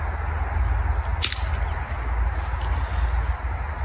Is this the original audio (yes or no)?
yes